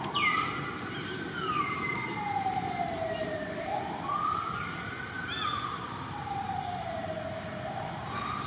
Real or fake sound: real